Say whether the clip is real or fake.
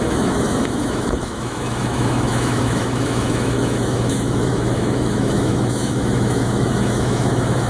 fake